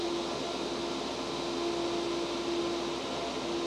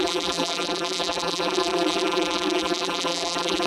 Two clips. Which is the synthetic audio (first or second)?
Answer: second